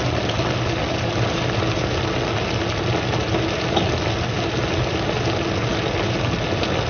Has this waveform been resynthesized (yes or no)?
no